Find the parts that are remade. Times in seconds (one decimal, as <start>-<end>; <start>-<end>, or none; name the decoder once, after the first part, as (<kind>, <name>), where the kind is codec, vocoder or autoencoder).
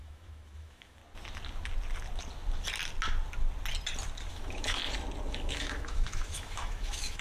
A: 0.0-1.0 (autoencoder, DAC-VAE); 4.3-4.8; 5.3-7.2